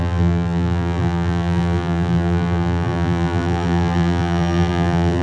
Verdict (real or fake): fake